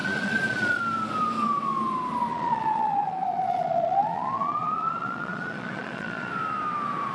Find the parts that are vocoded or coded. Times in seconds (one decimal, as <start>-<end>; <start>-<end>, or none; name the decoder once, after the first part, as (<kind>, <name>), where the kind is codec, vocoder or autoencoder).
0.0-0.8 (vocoder, Vocos); 2.3-6.3